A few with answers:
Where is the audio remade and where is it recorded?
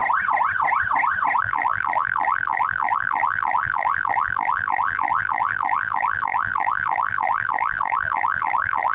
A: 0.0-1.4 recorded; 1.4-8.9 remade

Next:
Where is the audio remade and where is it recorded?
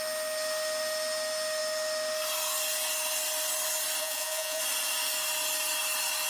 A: 0.0-4.0 recorded; 4.0-4.6 remade; 4.6-6.3 recorded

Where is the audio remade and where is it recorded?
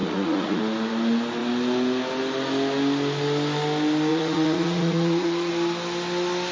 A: 0.0-0.6 remade; 0.6-4.1 recorded; 4.1-5.5 remade; 5.5-6.5 recorded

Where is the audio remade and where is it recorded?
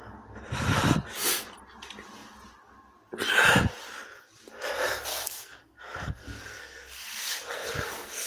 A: 0.0-5.1 recorded; 5.1-8.3 remade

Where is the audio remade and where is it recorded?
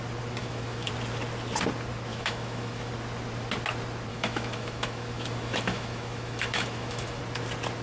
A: 0.0-0.4 recorded; 0.4-0.9 remade; 0.9-2.1 recorded; 2.1-2.9 remade; 2.9-4.1 recorded; 4.1-7.2 remade; 7.2-7.8 recorded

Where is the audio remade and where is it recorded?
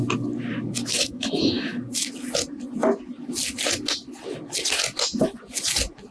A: 0.0-0.9 recorded; 0.9-1.8 remade; 1.8-6.1 recorded